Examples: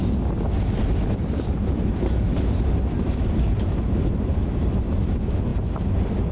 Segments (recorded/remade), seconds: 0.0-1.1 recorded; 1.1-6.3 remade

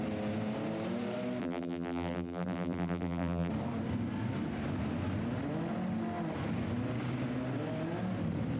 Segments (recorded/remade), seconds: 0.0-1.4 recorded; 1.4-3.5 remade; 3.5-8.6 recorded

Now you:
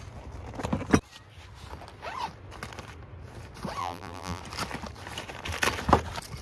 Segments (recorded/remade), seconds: 0.0-3.8 recorded; 3.8-4.4 remade; 4.4-6.4 recorded